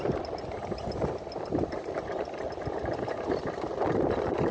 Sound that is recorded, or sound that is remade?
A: recorded